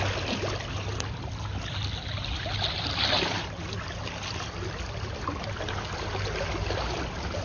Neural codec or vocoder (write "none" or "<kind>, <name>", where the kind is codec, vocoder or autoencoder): none